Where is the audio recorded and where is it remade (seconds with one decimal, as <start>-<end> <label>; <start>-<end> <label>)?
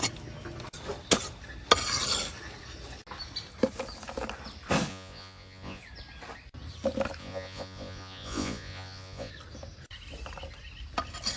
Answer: 0.0-4.9 recorded; 4.9-5.8 remade; 5.8-7.2 recorded; 7.2-9.3 remade; 9.3-11.4 recorded